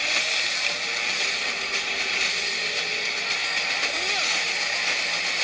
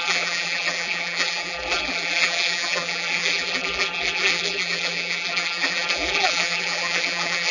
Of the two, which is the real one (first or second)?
first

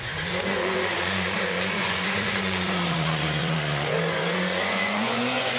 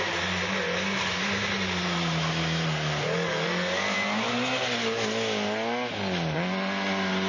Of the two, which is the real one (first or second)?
second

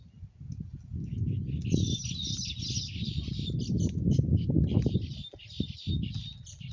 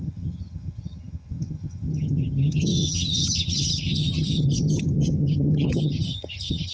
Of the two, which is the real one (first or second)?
first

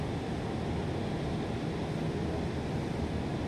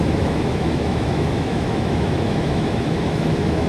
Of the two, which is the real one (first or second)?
first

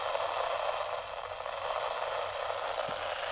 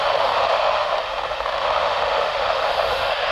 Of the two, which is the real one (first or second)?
first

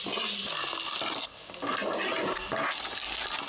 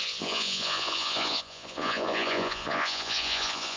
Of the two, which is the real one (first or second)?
first